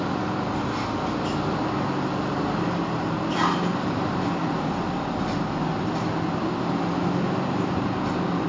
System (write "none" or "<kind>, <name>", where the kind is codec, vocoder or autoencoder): none